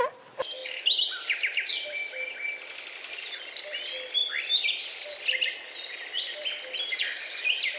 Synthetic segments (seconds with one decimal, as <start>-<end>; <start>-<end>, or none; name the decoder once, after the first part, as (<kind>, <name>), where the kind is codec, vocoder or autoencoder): none